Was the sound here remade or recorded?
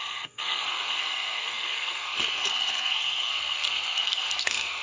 remade